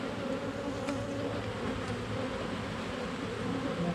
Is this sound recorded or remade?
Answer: recorded